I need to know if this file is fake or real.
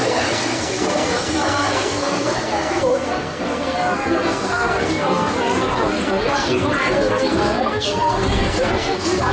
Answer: fake